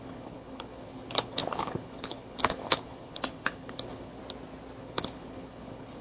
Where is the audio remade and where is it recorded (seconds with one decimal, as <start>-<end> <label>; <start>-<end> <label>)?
0.0-4.2 remade; 4.2-4.8 recorded; 4.8-6.0 remade